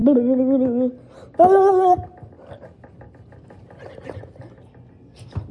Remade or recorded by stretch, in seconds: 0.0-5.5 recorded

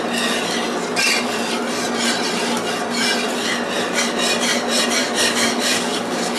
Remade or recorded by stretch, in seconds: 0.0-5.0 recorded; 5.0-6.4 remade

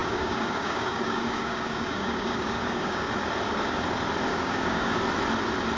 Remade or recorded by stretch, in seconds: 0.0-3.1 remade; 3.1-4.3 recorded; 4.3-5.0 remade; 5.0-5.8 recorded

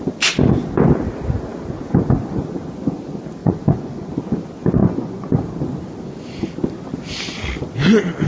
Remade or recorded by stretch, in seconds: 0.0-3.4 recorded; 3.4-4.2 remade; 4.2-4.8 recorded; 4.8-5.3 remade; 5.3-8.3 recorded

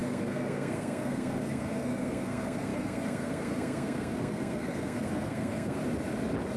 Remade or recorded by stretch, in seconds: 0.0-5.8 remade; 5.8-6.6 recorded

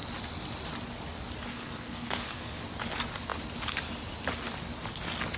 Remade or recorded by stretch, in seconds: 0.0-1.5 recorded; 1.5-2.6 remade; 2.6-5.4 recorded

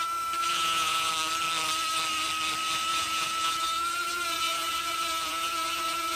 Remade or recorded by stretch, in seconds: 0.0-0.4 recorded; 0.4-1.1 remade; 1.1-2.9 recorded; 2.9-6.2 remade